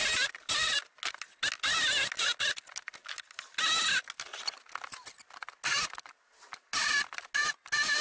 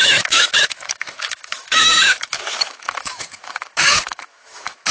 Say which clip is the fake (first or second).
second